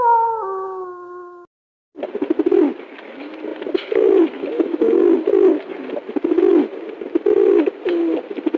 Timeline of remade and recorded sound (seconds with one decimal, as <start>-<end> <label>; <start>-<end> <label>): 0.0-8.6 recorded